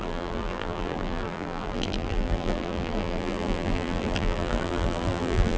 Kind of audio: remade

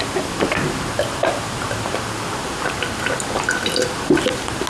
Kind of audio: recorded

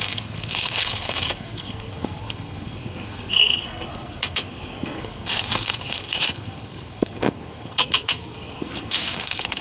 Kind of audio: remade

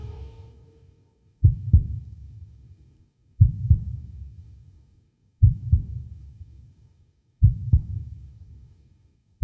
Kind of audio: remade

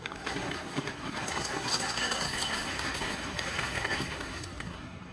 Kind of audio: remade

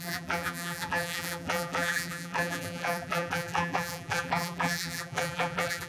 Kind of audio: remade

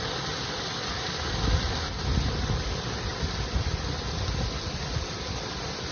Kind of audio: recorded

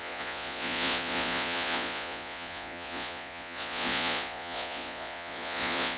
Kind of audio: remade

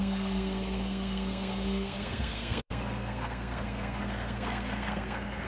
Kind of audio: remade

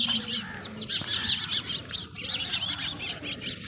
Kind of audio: recorded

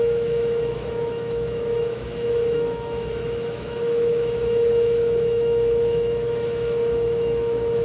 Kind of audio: remade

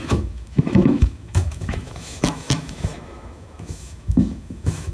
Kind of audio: remade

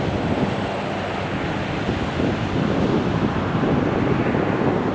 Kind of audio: recorded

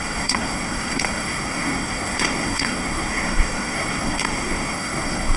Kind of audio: remade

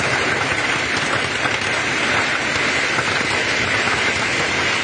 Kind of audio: recorded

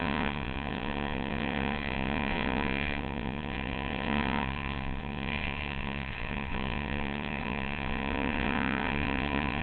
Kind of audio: remade